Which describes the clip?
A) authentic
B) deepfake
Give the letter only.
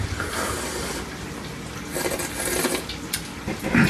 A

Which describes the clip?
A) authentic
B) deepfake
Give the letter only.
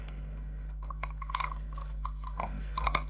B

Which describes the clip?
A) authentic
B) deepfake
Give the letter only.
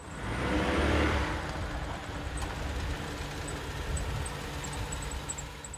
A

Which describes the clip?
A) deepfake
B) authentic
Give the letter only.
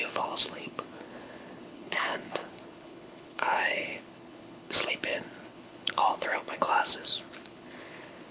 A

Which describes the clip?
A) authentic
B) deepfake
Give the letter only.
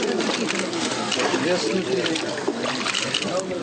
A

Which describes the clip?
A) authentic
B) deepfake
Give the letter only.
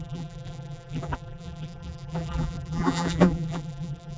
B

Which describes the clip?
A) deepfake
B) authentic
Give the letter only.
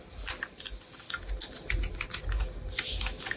B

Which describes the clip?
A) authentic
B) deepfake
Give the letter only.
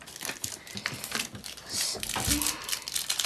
A